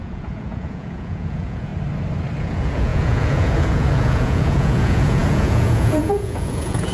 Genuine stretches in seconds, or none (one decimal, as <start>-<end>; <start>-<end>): 1.7-2.4